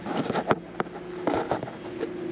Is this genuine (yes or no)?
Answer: yes